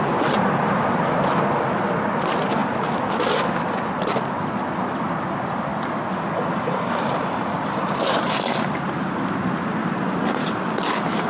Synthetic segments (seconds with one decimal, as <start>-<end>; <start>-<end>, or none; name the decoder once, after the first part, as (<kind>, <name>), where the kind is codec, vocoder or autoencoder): none